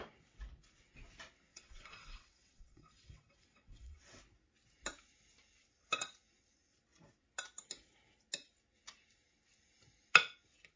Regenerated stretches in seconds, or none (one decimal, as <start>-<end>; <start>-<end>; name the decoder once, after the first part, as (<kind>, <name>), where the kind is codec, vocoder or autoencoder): 1.5-4.2 (vocoder, WaveNeXt)

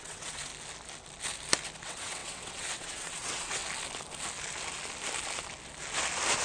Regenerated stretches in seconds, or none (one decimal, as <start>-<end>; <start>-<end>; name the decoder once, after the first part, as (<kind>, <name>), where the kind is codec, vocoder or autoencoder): 0.0-0.5 (vocoder, WaveNeXt); 1.8-3.6

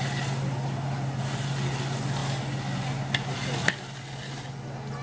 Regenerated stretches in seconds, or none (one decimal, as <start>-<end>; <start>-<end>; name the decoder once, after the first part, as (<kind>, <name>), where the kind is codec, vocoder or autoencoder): none

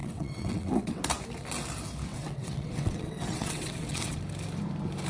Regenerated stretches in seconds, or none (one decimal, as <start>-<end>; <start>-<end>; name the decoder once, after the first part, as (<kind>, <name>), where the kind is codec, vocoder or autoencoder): 0.0-1.0 (vocoder, WaveNeXt); 2.1-4.2

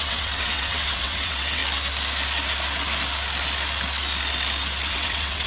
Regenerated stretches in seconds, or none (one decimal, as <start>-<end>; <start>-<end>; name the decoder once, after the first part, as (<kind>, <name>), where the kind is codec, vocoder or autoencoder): 0.0-1.6 (vocoder, WaveNeXt); 4.9-5.5

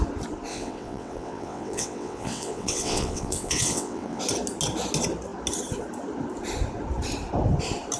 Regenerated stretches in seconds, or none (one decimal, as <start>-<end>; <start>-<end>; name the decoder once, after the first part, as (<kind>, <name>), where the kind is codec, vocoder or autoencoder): 0.5-4.2 (vocoder, WaveNeXt)

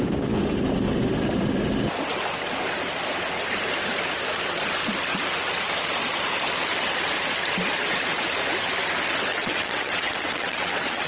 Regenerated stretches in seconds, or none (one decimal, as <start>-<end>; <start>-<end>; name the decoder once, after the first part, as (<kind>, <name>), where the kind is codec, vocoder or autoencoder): 9.3-11.1 (vocoder, WaveNeXt)

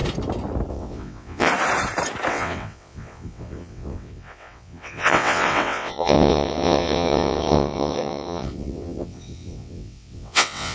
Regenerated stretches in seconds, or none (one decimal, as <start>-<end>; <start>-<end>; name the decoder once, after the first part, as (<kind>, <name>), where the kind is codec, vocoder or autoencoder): 0.7-1.5 (vocoder, WaveNeXt); 2.3-10.7